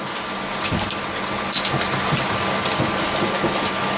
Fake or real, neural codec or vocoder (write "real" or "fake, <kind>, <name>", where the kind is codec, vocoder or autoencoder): real